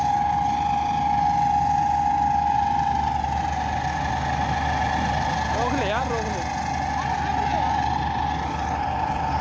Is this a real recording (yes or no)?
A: yes